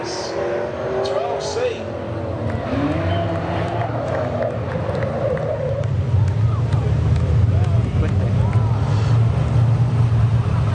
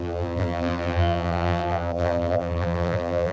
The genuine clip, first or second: first